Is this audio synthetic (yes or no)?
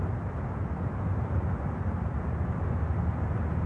no